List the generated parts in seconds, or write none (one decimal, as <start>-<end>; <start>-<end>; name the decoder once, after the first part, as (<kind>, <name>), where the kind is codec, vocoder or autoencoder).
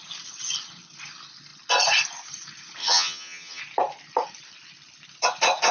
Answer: 2.8-3.6 (vocoder, HiFi-GAN)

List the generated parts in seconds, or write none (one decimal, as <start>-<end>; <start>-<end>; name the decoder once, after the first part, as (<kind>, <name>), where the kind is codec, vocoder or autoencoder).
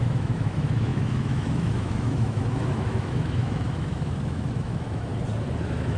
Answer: 0.0-5.1 (autoencoder, DAC-VAE); 5.6-6.0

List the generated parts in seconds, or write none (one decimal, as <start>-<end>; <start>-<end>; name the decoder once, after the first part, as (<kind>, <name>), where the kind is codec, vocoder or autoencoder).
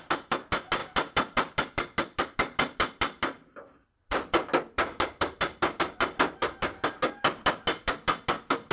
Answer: none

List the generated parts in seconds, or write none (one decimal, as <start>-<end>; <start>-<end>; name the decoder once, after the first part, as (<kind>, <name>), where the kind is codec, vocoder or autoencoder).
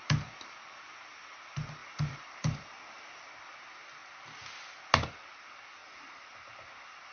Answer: 1.8-3.3 (vocoder, BigVGAN v2); 5.8-7.1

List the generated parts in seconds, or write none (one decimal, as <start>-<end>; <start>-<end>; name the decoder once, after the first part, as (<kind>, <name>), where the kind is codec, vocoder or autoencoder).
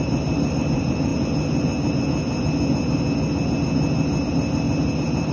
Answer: 0.0-1.1 (vocoder, BigVGAN v2); 4.3-5.3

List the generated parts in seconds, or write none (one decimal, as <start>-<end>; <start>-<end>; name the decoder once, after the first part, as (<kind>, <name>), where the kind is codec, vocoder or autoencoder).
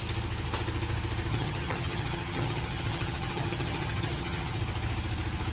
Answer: 1.3-4.6 (vocoder, HiFi-GAN)